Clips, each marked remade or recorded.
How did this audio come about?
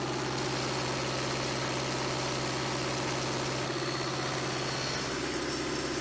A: recorded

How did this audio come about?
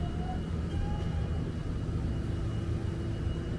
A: recorded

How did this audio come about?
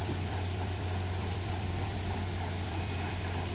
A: remade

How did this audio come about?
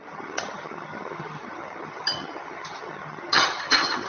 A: remade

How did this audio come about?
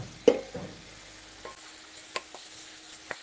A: recorded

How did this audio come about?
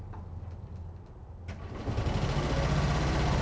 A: recorded